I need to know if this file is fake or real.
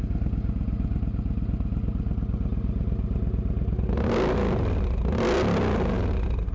real